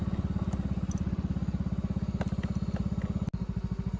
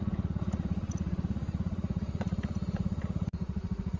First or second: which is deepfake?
second